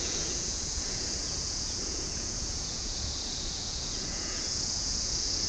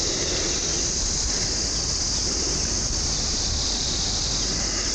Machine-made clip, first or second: first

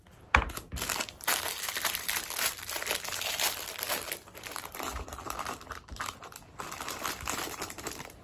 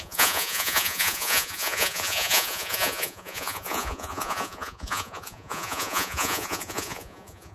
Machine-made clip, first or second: second